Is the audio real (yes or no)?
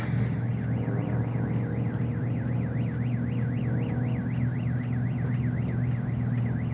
yes